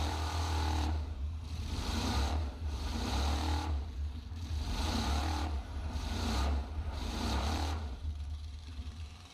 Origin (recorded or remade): remade